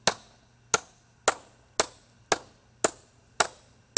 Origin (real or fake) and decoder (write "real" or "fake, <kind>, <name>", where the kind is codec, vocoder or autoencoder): real